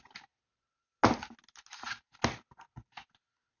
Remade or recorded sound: recorded